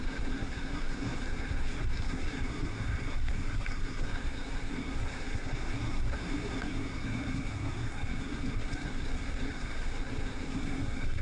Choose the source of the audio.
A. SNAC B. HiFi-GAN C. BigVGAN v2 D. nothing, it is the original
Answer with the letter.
A